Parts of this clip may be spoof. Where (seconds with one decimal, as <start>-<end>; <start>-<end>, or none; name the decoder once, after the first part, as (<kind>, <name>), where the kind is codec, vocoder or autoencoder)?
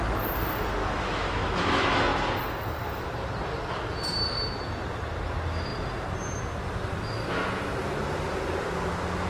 0.8-1.7 (autoencoder, DAC-VAE)